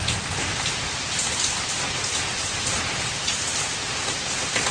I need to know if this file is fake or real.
real